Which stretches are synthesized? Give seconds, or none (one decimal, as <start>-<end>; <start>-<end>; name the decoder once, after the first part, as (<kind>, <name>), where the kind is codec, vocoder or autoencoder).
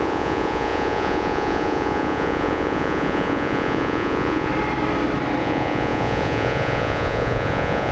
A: 0.0-4.5 (vocoder, Vocos); 5.4-7.9